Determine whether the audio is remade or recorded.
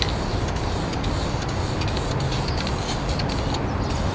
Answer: recorded